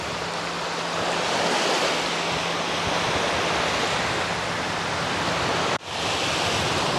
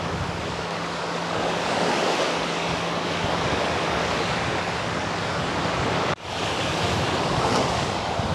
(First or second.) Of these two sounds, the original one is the first